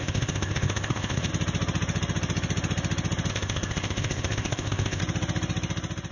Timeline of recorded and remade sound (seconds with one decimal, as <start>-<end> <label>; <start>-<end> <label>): 0.0-1.3 remade; 1.3-3.3 recorded; 3.3-5.0 remade; 5.0-6.1 recorded